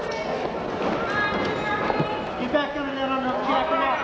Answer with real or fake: real